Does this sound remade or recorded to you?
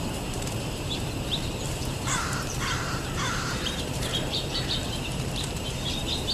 remade